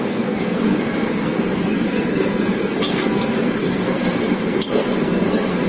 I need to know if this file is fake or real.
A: fake